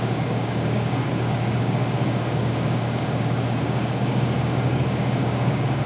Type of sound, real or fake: fake